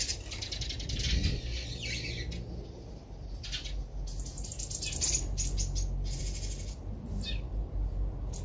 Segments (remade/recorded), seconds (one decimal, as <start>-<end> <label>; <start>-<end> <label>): 0.0-8.4 recorded